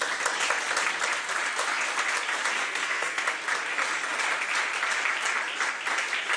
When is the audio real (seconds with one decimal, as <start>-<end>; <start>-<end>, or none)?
0.0-2.6; 3.2-6.4

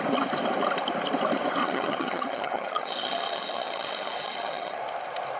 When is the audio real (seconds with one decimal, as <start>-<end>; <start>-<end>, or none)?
0.0-1.6; 4.8-5.4

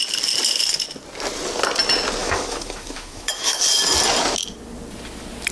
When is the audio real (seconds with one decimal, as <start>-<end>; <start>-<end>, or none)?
0.0-2.2; 3.6-5.5

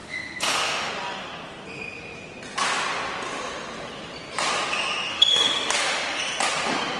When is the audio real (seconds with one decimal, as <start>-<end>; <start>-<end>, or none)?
0.9-5.1; 6.2-7.0

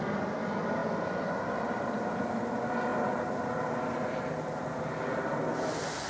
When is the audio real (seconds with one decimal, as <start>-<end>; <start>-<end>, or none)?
0.0-6.1

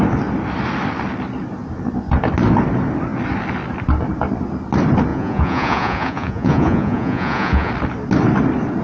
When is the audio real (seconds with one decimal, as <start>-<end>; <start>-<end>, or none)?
0.0-5.1; 7.7-8.8

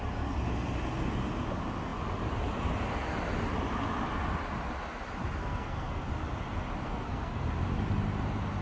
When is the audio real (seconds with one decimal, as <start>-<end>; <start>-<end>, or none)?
0.0-5.4; 6.1-6.8; 7.4-8.6

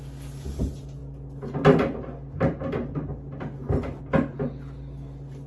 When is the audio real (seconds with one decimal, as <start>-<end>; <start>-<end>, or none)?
0.0-5.5